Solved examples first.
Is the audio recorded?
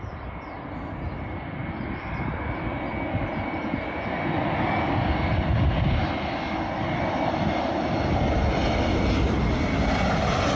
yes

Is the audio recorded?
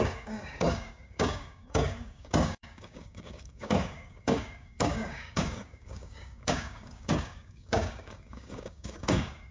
no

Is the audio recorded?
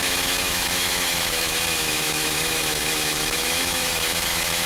no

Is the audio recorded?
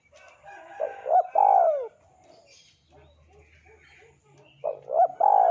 yes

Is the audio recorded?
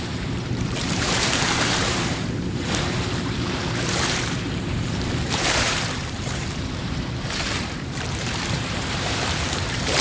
no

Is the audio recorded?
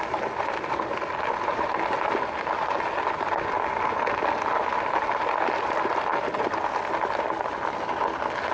yes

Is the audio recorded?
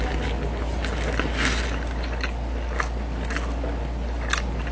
yes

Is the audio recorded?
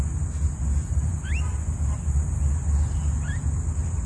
yes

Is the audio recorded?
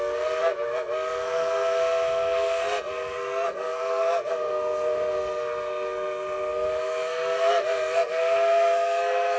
no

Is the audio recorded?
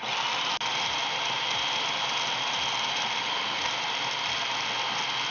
yes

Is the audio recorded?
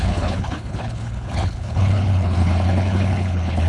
no